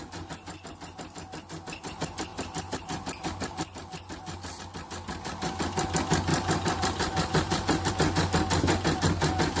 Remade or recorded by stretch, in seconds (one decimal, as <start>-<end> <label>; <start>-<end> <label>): 0.0-6.3 recorded; 6.3-7.9 remade; 7.9-9.6 recorded